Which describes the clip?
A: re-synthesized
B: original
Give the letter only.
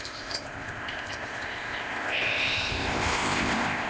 A